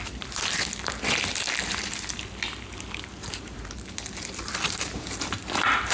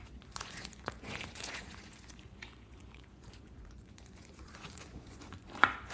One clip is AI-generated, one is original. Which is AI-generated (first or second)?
second